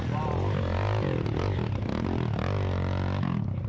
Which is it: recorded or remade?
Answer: recorded